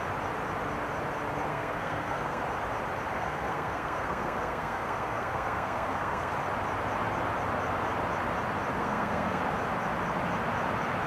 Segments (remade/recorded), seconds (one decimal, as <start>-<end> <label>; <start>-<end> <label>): 0.0-1.5 recorded; 1.5-2.4 remade; 2.4-3.1 recorded; 3.1-6.3 remade; 6.3-8.8 recorded; 8.8-9.4 remade; 9.4-11.1 recorded